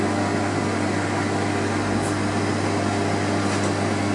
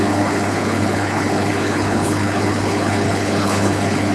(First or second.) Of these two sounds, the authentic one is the first